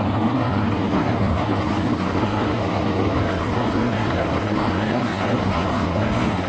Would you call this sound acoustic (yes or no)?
no